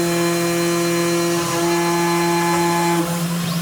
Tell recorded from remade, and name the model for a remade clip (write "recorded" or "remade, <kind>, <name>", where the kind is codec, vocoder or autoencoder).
recorded